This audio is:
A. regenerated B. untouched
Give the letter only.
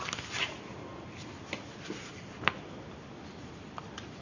B